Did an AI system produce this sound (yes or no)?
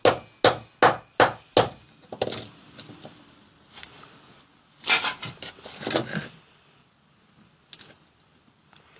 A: no